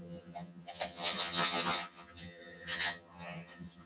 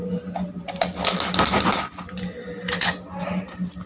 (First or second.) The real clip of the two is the second